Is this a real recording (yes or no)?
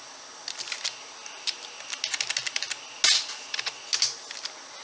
yes